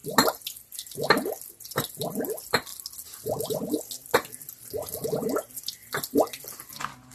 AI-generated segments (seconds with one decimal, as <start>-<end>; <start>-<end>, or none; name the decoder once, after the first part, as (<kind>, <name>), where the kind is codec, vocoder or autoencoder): 0.0-1.5 (vocoder, BigVGAN v2); 5.8-6.4